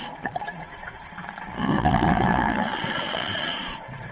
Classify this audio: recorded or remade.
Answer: remade